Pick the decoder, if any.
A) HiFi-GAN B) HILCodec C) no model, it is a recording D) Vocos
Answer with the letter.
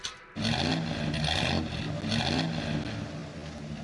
C